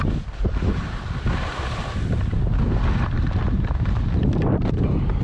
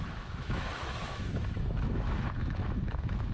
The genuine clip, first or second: first